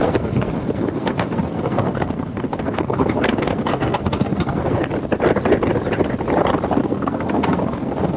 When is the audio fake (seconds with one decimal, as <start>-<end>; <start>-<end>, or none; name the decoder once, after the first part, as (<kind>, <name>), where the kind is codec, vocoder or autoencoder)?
0.0-4.9 (codec, SNAC); 6.8-8.2